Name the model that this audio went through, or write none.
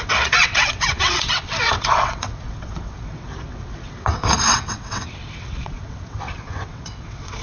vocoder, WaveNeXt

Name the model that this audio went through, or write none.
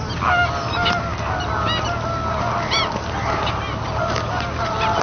none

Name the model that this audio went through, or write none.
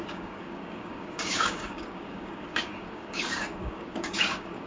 codec, DAC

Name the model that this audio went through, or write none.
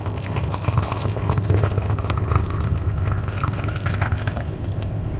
codec, ZipCodec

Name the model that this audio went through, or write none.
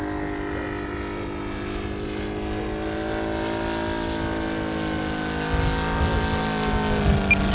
none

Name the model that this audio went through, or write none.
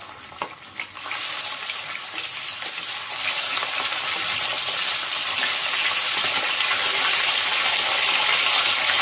none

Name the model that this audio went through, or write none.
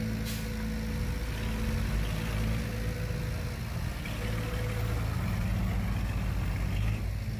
none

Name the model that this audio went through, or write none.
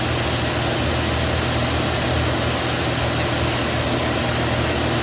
none